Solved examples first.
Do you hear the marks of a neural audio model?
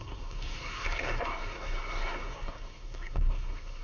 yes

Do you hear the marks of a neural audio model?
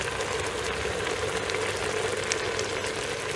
no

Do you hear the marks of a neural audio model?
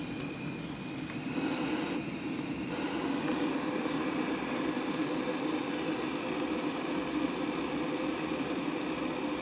no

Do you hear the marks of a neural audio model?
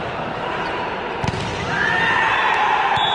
no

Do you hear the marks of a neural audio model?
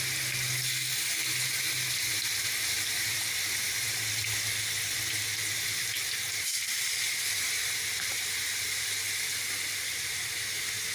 no